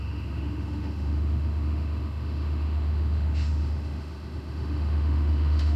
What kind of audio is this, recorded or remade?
remade